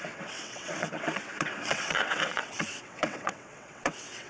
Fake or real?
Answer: fake